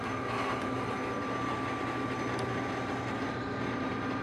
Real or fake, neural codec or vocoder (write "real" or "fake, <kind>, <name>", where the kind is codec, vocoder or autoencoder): real